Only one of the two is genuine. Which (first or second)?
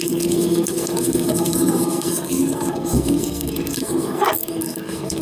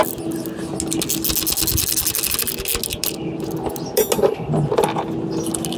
second